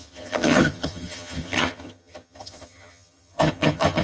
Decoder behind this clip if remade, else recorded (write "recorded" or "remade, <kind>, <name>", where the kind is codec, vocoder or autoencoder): remade, vocoder, HiFi-GAN